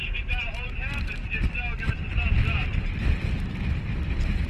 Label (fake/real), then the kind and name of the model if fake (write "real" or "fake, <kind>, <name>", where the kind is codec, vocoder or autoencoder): real